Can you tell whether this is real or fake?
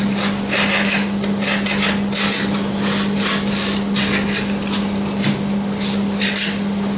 real